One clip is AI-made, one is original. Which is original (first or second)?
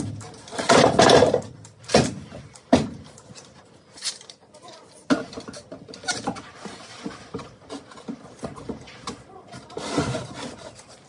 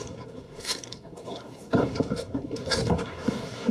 first